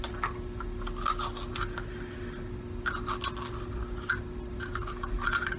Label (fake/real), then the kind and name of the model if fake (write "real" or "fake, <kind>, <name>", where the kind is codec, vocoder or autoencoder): real